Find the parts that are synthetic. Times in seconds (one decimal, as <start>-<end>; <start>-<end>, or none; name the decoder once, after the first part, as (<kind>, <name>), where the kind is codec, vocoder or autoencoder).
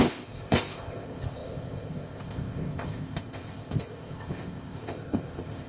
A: 0.0-5.7 (codec, ZipCodec)